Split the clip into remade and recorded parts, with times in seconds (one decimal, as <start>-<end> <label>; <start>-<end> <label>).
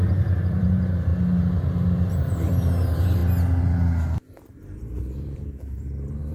0.0-1.1 remade; 1.1-2.1 recorded; 2.1-3.2 remade; 3.2-4.5 recorded; 4.5-6.3 remade